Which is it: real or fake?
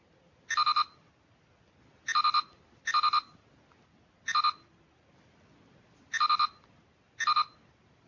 real